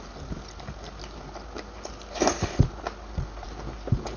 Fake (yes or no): no